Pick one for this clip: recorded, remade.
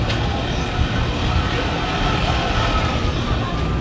recorded